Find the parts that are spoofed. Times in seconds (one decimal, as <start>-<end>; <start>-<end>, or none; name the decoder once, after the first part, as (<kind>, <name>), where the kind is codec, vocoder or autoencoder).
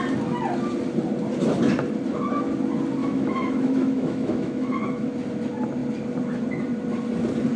3.0-5.1 (autoencoder, DAC-VAE)